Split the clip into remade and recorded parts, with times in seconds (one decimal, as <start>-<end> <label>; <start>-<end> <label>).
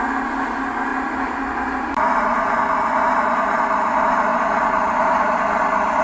0.0-0.9 recorded; 0.9-2.0 remade; 2.0-4.3 recorded; 4.3-5.2 remade; 5.2-6.0 recorded